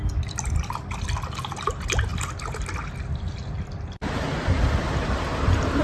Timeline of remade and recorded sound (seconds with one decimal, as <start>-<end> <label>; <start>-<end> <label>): 0.0-5.8 recorded